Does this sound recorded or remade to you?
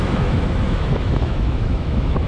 remade